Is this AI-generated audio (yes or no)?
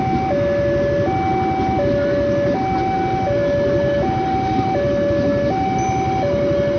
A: no